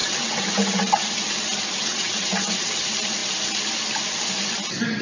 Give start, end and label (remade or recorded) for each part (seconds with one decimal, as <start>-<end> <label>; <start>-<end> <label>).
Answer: 0.0-1.2 remade; 1.2-1.8 recorded; 1.8-2.8 remade; 2.8-5.0 recorded